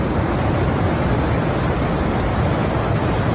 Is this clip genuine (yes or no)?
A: yes